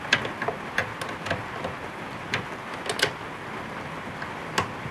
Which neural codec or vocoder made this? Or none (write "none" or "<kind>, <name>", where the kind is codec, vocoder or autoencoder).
none